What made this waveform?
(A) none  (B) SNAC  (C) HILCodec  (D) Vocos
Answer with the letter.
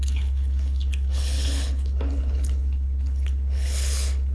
C